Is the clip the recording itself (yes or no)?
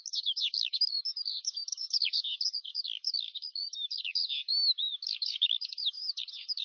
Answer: no